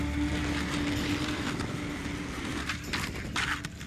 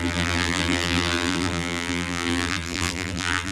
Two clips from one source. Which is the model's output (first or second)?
second